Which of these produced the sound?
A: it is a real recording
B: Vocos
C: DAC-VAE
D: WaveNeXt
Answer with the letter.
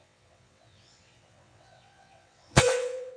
D